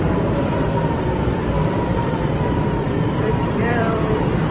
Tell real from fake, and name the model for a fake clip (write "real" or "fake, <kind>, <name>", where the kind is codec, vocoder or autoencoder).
fake, vocoder, BigVGAN v2